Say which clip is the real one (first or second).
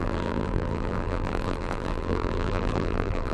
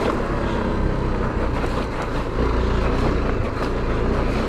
second